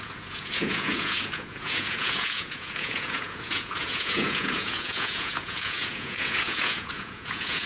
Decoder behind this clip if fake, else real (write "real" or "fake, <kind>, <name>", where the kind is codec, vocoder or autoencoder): fake, vocoder, Vocos